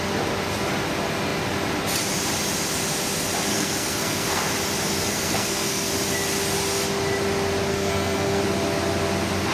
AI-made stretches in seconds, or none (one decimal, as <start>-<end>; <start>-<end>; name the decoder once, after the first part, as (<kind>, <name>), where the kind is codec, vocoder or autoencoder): 3.5-4.4 (codec, SNAC); 5.1-5.9; 7.7-8.4